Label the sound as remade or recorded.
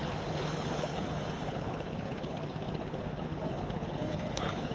remade